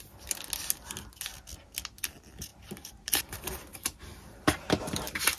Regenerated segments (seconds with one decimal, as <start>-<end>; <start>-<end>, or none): 2.5-3.2; 3.7-4.8